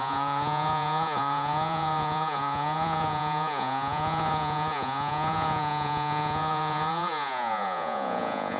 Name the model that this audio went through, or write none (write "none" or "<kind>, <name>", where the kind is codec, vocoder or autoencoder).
vocoder, Vocos